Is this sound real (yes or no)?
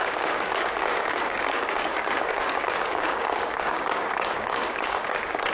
no